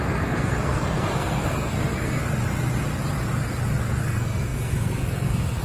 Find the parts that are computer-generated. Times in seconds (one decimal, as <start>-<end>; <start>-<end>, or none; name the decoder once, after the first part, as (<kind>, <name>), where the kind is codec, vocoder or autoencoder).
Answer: 0.0-2.2 (codec, SNAC); 4.0-5.6